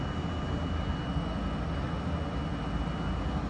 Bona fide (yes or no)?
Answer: yes